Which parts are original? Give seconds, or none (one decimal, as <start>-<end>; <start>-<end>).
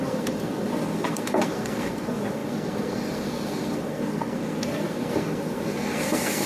none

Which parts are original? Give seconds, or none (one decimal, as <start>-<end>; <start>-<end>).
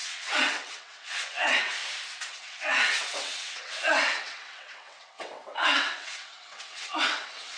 1.8-2.3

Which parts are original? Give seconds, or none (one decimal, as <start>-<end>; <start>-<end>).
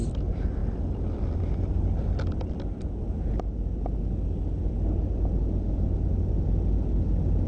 0.0-7.5